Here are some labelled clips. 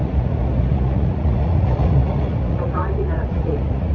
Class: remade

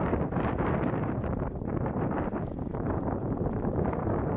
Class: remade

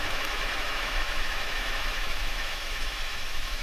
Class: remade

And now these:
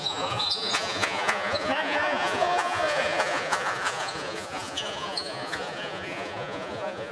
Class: remade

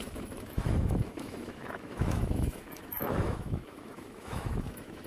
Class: remade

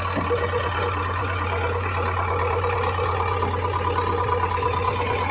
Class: recorded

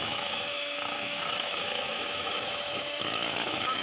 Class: remade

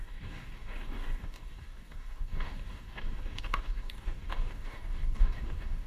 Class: remade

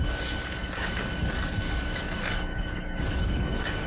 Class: remade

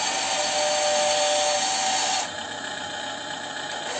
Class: recorded